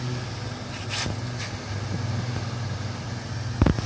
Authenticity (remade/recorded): recorded